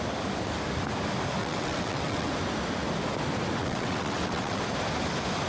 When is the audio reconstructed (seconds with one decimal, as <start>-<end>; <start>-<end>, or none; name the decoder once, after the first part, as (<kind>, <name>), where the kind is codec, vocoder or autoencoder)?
1.4-2.3 (vocoder, WaveNeXt); 3.6-4.6